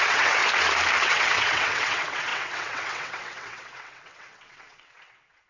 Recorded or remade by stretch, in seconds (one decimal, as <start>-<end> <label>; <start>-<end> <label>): 0.0-0.4 remade; 0.4-1.0 recorded; 1.0-5.5 remade